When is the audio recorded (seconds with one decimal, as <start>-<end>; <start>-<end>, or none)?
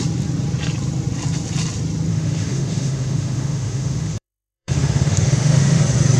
0.0-2.1; 5.8-6.2